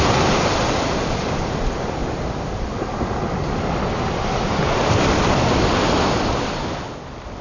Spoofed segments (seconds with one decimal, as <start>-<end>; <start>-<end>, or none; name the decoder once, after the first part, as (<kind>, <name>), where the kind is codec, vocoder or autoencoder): none